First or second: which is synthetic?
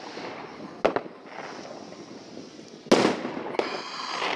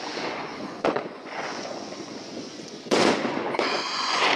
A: second